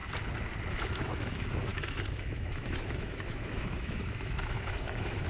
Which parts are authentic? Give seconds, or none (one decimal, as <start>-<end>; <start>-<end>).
0.0-0.7